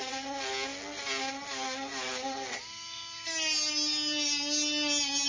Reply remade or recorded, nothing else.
recorded